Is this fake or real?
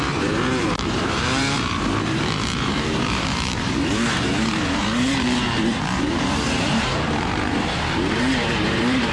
fake